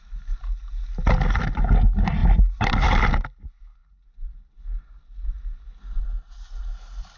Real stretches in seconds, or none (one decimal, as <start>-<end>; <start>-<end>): 0.0-7.2